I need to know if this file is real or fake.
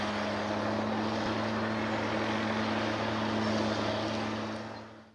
real